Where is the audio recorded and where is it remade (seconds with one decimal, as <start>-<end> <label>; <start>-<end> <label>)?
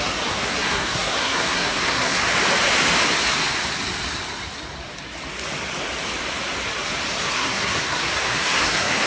0.0-2.2 remade; 2.2-7.2 recorded; 7.2-9.1 remade